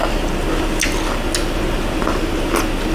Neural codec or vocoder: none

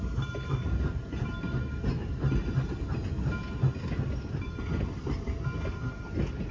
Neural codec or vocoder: none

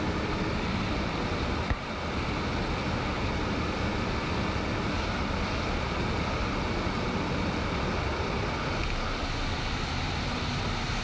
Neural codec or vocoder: none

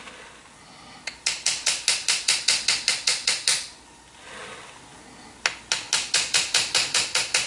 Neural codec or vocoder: none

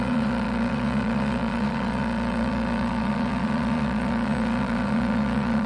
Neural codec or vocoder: vocoder, Vocos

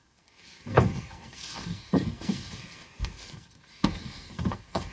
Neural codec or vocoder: codec, SNAC